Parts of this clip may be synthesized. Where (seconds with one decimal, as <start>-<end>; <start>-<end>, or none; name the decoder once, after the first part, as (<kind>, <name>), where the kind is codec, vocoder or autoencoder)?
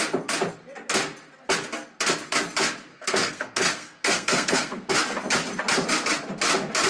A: 2.9-4.9 (codec, SNAC)